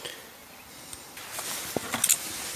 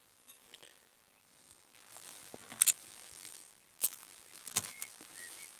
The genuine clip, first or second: first